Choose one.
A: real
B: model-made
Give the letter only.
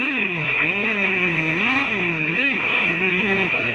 B